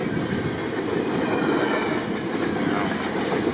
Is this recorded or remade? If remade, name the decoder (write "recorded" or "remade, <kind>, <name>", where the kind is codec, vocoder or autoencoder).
recorded